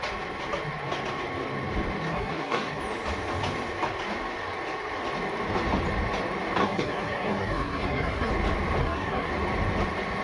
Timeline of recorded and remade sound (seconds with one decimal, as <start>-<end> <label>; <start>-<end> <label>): 0.0-2.1 recorded; 2.1-2.8 remade; 2.8-6.6 recorded; 6.6-8.3 remade; 8.3-8.8 recorded; 8.8-9.3 remade; 9.3-10.2 recorded